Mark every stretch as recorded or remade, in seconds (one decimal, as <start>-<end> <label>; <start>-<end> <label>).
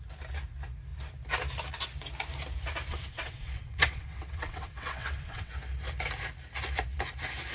0.0-2.9 recorded; 2.9-5.5 remade; 5.5-7.5 recorded